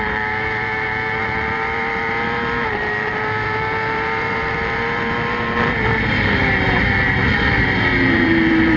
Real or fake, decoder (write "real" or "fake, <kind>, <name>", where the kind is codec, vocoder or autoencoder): fake, vocoder, BigVGAN v2